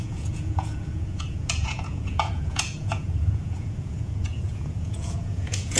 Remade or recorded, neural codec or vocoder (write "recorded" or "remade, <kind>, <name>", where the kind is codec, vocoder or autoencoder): remade, vocoder, Vocos